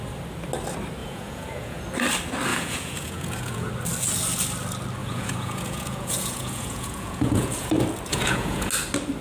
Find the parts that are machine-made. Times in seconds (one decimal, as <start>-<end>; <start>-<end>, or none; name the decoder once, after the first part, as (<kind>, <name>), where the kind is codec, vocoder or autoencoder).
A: 1.0-1.8 (vocoder, Vocos); 2.5-3.7; 5.0-7.7; 8.1-8.7